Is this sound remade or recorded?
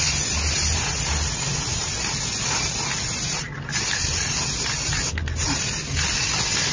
recorded